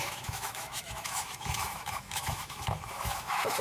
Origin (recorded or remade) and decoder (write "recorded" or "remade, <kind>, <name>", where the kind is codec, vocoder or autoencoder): remade, autoencoder, DAC-VAE